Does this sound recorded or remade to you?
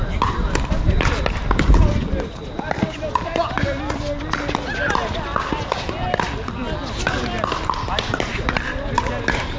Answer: recorded